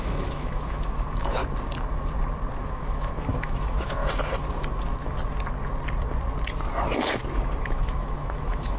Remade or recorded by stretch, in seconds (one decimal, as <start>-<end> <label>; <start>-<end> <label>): 0.0-1.4 remade; 1.4-2.6 recorded; 2.6-4.0 remade; 4.0-7.6 recorded; 7.6-8.8 remade